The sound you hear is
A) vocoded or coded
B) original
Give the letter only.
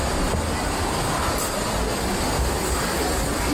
B